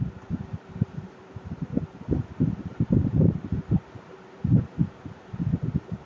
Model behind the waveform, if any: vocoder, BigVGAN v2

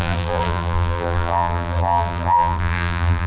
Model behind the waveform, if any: vocoder, BigVGAN v2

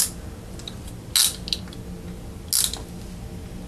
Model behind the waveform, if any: none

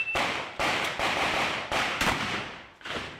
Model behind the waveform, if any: none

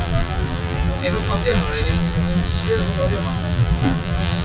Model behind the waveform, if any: vocoder, BigVGAN v2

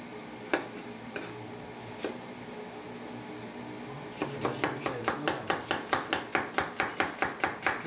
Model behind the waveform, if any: none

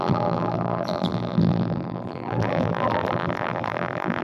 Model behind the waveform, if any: vocoder, BigVGAN v2